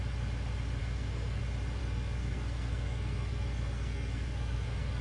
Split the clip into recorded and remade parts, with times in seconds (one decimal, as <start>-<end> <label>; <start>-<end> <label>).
0.0-0.8 recorded; 0.8-1.4 remade; 1.4-1.8 recorded; 1.8-5.0 remade